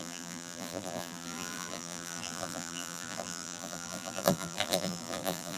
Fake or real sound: fake